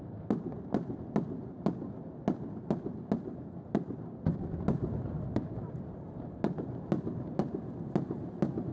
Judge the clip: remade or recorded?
recorded